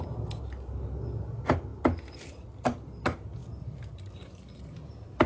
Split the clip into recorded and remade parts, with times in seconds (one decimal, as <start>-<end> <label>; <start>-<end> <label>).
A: 0.0-5.3 recorded